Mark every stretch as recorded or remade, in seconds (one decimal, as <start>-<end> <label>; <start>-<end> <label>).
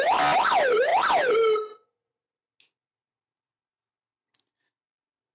0.0-5.3 recorded